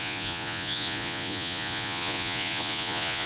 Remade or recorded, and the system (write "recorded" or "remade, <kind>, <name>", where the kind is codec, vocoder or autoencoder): remade, vocoder, Vocos